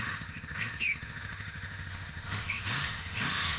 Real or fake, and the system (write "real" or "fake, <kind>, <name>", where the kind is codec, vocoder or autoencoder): fake, autoencoder, DAC-VAE